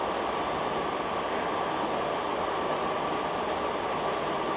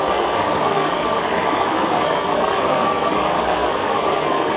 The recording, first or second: first